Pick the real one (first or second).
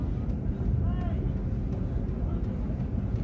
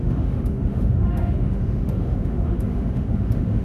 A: first